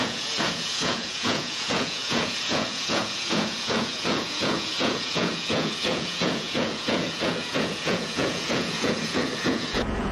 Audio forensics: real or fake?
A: fake